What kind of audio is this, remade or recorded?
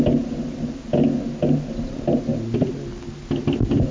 recorded